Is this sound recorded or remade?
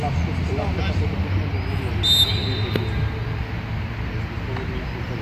recorded